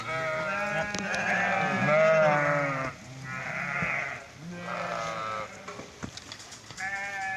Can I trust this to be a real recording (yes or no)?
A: yes